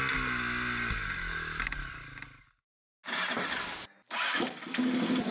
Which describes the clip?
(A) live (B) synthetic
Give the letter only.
A